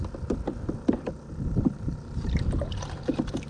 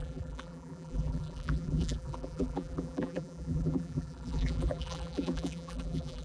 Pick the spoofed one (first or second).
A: second